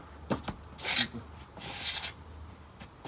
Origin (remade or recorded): recorded